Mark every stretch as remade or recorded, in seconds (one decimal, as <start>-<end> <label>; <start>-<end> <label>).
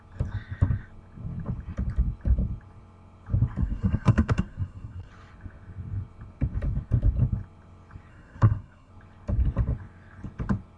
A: 0.0-3.6 recorded; 3.6-5.1 remade; 5.1-8.1 recorded; 8.1-8.9 remade; 8.9-10.8 recorded